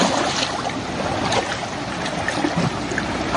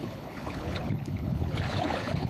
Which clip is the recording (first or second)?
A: first